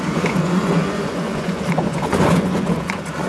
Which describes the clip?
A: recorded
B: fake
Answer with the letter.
B